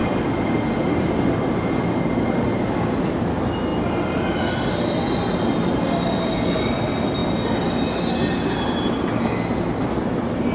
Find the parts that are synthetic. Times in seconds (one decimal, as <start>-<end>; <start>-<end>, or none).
none